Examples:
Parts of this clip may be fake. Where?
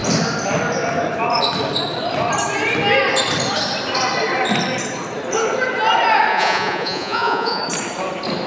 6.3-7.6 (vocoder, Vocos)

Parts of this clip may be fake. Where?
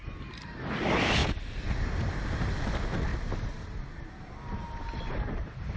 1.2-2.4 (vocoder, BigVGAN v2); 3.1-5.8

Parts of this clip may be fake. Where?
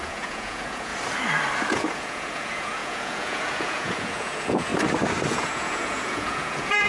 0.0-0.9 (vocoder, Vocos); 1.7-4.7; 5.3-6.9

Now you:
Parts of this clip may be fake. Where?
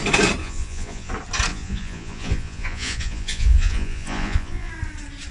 0.4-1.1 (vocoder, Vocos); 1.5-4.7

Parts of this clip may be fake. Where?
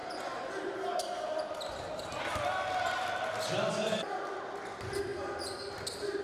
none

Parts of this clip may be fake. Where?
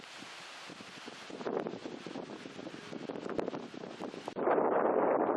none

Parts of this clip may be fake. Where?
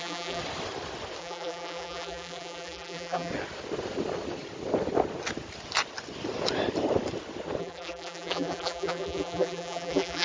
0.0-0.4 (vocoder, BigVGAN v2); 1.2-3.3; 7.6-10.2